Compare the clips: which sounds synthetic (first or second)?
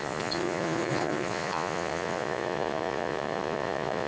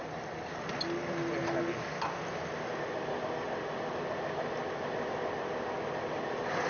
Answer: first